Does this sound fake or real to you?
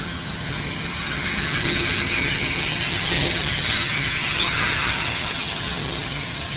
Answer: fake